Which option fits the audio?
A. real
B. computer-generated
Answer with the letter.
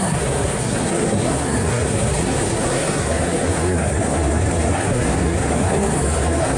B